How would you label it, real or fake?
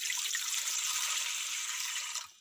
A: fake